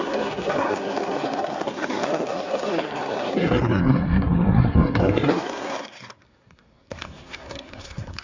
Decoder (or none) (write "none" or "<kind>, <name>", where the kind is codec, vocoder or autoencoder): codec, SNAC